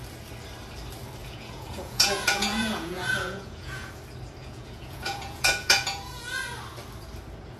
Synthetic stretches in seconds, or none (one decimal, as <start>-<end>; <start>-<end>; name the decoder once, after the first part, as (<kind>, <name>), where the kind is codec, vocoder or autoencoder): 1.2-3.9 (vocoder, Vocos); 4.4-6.3